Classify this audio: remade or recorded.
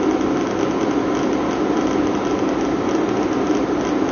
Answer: recorded